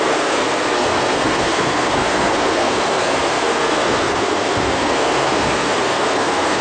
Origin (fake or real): fake